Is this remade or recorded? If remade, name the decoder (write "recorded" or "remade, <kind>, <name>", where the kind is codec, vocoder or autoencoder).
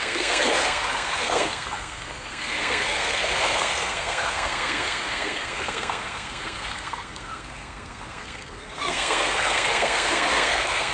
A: remade, codec, SNAC